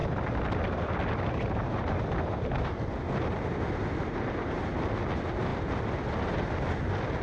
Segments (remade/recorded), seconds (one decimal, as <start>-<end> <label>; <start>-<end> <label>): 0.0-7.2 recorded